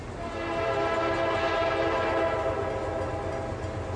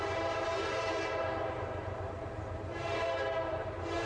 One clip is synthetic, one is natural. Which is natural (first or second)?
first